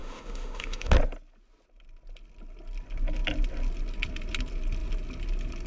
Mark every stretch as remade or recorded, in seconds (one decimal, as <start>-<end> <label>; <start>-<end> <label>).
0.0-0.9 remade; 0.9-5.7 recorded